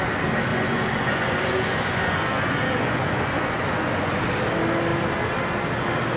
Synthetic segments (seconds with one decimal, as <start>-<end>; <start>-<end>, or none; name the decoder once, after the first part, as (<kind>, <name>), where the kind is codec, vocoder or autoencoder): 0.5-4.2 (vocoder, Vocos)